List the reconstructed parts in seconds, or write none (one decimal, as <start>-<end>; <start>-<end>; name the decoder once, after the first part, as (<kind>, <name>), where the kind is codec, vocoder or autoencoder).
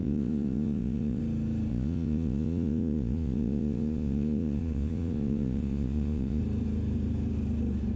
0.0-1.2 (vocoder, Vocos); 1.7-6.4